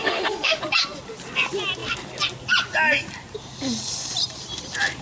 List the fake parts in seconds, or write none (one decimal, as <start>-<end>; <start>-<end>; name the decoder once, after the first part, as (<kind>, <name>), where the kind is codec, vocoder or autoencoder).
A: 0.0-0.6 (autoencoder, DAC-VAE)